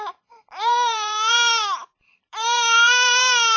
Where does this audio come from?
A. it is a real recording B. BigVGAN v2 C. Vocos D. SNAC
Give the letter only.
B